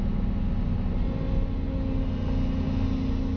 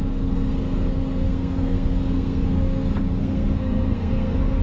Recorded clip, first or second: first